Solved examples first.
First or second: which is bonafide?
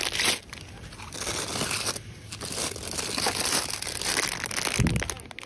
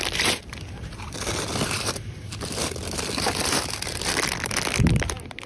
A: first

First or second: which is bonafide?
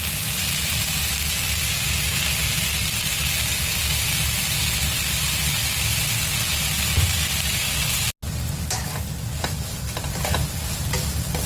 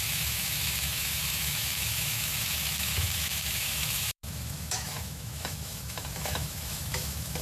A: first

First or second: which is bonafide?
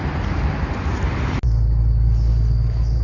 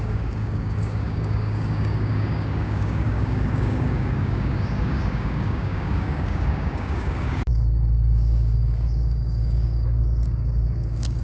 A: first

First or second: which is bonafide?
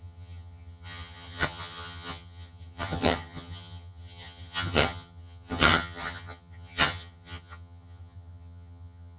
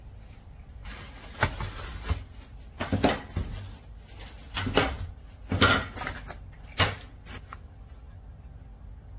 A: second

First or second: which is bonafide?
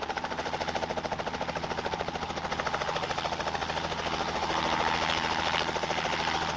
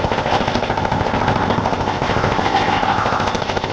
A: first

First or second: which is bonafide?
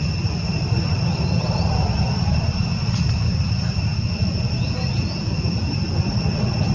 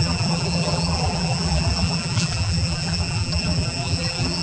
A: first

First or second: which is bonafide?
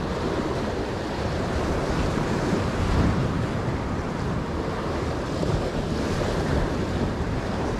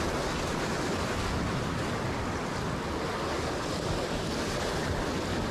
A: second